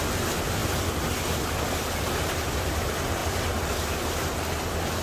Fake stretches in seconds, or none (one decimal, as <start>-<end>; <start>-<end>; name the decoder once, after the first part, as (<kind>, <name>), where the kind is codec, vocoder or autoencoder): none